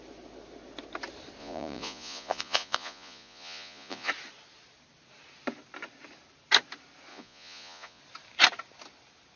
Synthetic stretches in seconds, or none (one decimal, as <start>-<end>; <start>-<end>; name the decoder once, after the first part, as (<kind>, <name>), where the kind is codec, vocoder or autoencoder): 1.4-4.1 (vocoder, Vocos); 7.1-8.0